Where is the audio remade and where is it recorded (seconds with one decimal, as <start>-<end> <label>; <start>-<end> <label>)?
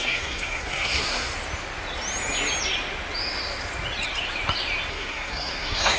0.0-1.3 remade; 1.3-4.9 recorded; 4.9-6.0 remade